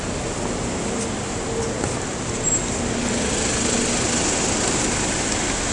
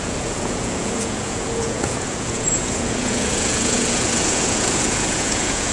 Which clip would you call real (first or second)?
first